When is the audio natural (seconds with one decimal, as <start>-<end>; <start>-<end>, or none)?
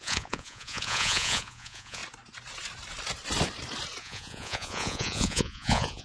2.0-4.0